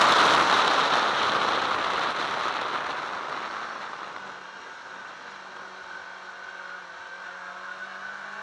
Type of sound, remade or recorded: recorded